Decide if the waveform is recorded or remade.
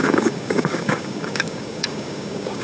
remade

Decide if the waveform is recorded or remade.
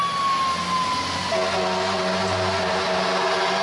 recorded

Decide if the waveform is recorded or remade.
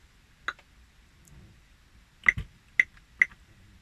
recorded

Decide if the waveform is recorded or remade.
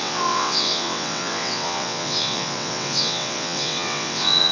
remade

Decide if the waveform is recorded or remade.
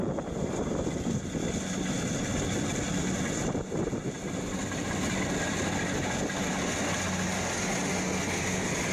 recorded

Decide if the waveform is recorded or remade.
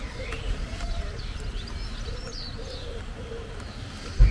recorded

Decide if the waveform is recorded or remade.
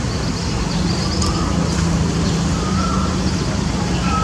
recorded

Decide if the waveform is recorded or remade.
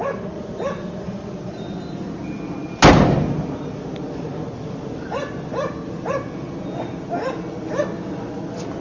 recorded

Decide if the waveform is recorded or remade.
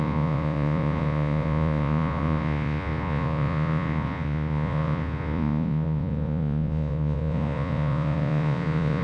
remade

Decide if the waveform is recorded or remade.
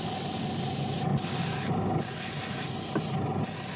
recorded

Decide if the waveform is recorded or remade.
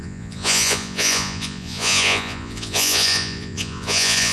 remade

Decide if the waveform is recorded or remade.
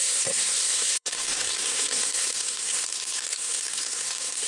remade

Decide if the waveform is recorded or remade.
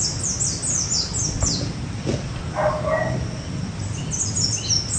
recorded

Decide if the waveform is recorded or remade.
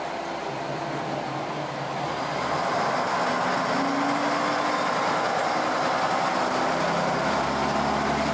recorded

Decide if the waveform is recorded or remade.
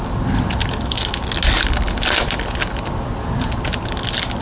recorded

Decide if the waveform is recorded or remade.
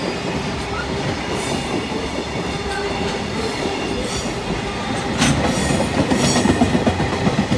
recorded